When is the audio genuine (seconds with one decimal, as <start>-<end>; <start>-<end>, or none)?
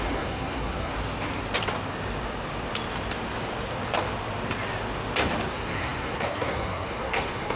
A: 0.9-5.5